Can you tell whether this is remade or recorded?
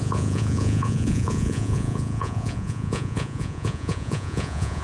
remade